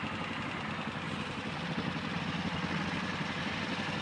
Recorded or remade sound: recorded